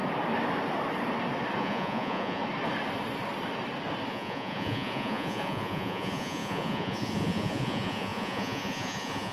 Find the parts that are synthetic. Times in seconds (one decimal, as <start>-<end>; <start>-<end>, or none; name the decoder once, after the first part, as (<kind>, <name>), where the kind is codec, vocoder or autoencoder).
1.6-2.4 (vocoder, Vocos); 4.1-9.3